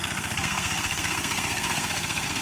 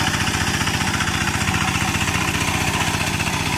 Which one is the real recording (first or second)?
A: second